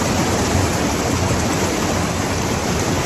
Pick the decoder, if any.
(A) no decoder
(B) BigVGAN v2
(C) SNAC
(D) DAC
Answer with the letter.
B